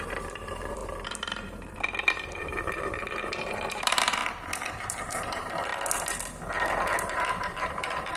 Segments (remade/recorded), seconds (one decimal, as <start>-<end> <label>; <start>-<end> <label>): 0.0-4.2 remade; 4.2-4.8 recorded; 4.8-5.7 remade; 5.7-7.0 recorded; 7.0-8.2 remade